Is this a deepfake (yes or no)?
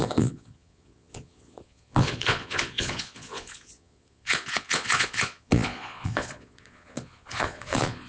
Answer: yes